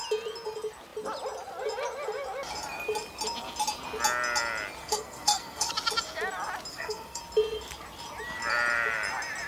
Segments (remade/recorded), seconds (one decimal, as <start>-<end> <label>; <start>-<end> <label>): 0.0-4.8 recorded; 4.8-5.7 remade; 5.7-6.7 recorded; 6.7-7.2 remade; 7.2-9.5 recorded